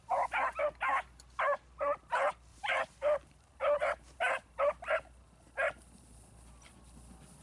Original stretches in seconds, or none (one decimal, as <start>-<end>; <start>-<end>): 0.0-2.5; 4.6-7.4